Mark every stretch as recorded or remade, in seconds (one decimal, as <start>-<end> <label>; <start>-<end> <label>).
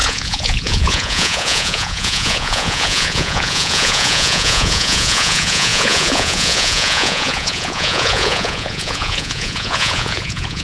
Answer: 0.0-10.6 remade